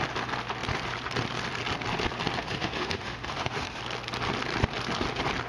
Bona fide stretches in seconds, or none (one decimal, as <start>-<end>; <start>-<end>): 0.0-2.4; 3.8-5.5